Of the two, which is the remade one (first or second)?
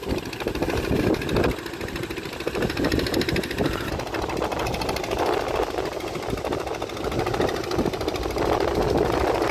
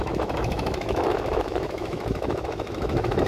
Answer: second